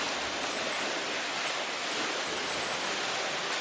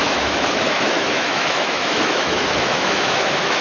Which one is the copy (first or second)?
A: second